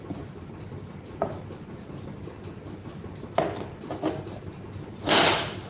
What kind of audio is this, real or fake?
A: real